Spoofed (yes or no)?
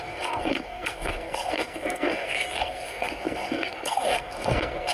yes